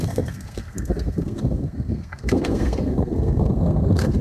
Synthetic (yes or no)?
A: yes